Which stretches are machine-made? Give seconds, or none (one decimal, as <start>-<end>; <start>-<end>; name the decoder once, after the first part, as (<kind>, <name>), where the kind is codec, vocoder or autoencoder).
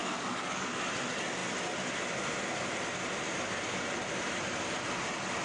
0.0-0.7 (codec, DAC)